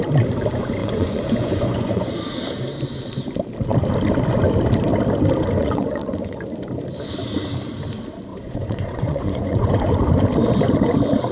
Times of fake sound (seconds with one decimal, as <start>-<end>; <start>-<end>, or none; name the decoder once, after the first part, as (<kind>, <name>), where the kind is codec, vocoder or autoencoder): 0.8-2.1 (vocoder, Vocos); 5.6-6.4; 8.3-9.7